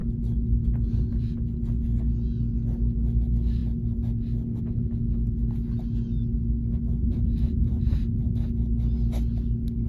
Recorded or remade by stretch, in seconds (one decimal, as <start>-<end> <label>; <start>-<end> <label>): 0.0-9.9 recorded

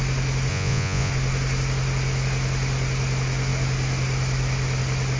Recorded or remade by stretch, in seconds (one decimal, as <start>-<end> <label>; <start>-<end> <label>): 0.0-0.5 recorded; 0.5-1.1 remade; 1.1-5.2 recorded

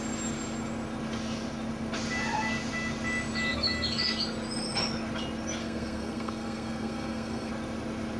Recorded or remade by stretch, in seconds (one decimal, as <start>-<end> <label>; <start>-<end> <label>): 0.0-5.6 recorded; 5.6-7.5 remade; 7.5-8.2 recorded